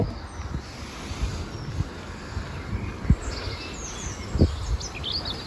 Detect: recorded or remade recorded